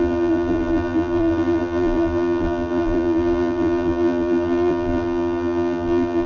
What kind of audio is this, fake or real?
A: fake